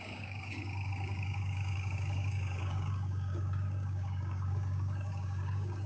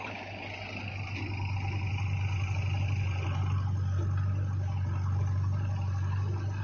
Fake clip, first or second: first